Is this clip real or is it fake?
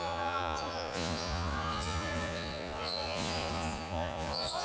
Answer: fake